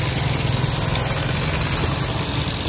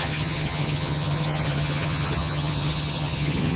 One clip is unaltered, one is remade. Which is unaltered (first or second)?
first